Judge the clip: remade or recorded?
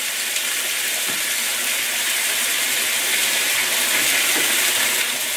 remade